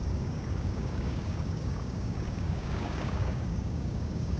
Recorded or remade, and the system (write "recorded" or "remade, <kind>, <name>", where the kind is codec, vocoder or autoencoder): remade, codec, DAC